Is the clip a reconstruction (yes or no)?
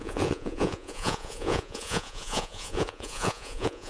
yes